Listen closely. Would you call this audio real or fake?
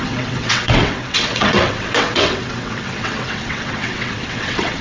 fake